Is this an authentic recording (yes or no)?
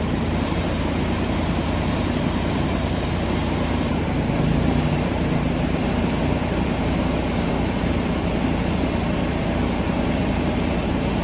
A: no